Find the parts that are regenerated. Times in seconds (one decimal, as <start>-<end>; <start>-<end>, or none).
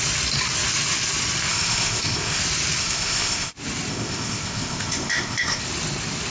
1.5-2.4; 2.8-3.5; 3.9-5.6